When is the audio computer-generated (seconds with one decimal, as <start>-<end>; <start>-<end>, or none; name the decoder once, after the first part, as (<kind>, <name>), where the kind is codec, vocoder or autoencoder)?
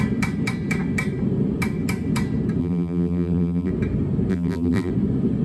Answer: 2.6-3.7 (vocoder, BigVGAN v2); 4.3-4.9